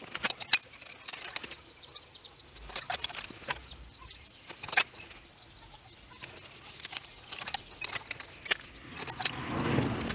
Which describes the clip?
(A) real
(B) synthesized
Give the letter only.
A